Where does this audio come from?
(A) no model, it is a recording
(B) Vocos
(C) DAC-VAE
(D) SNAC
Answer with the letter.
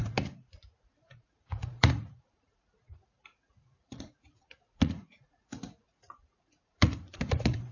B